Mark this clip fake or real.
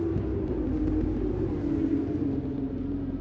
real